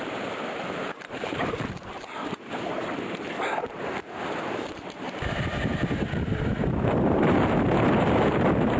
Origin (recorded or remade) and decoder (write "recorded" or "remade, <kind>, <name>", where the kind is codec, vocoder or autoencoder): remade, vocoder, BigVGAN v2